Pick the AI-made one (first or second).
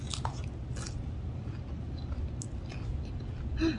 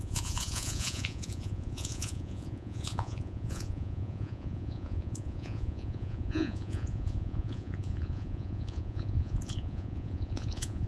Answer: second